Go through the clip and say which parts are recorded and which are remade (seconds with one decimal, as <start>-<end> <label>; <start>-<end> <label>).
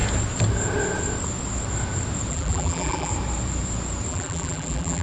0.0-2.3 recorded; 2.3-3.1 remade; 3.1-4.1 recorded; 4.1-5.0 remade